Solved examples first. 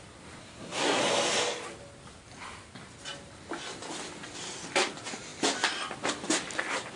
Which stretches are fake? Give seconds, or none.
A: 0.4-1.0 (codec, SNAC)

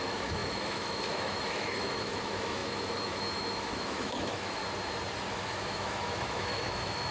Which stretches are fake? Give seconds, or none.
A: 0.0-4.6 (autoencoder, DAC-VAE); 5.3-7.1

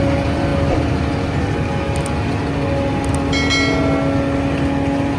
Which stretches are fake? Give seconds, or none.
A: none

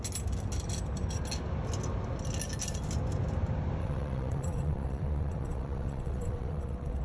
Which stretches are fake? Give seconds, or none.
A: 3.8-7.0 (vocoder, WaveNeXt)

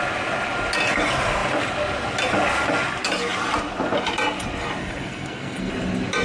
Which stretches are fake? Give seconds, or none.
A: 4.8-5.7 (codec, SNAC)

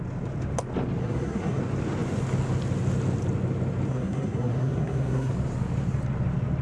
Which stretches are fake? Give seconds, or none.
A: 1.0-1.6 (codec, SNAC); 3.9-5.3

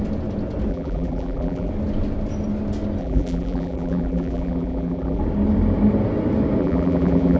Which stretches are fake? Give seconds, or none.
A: 0.7-1.7 (vocoder, BigVGAN v2); 3.0-5.2; 6.6-7.4

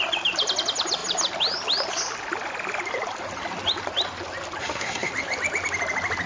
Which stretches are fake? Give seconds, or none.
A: 4.6-5.1 (codec, SNAC)